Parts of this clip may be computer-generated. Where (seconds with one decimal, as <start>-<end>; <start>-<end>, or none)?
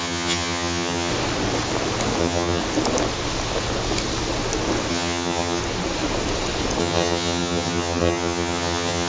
0.0-1.1; 2.2-2.6; 4.9-5.6; 6.8-9.1